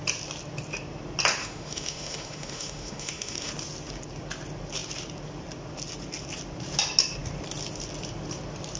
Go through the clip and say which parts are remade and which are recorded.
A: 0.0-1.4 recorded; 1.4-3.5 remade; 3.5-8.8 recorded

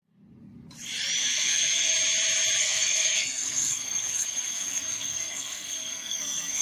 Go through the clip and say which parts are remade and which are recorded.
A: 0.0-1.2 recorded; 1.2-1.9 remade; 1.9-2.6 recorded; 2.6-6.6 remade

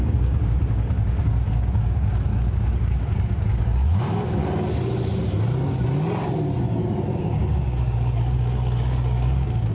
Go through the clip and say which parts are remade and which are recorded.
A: 0.0-4.4 remade; 4.4-7.1 recorded; 7.1-9.7 remade